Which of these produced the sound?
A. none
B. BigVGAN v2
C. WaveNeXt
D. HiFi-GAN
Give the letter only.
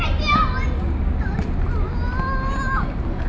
A